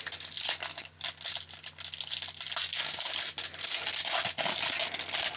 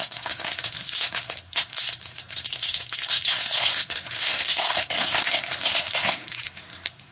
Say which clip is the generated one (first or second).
second